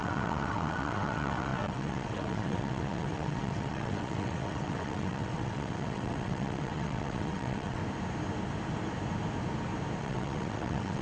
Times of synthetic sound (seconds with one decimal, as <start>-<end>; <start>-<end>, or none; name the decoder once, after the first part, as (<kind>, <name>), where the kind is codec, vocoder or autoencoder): 0.0-7.8 (vocoder, WaveNeXt); 10.0-11.0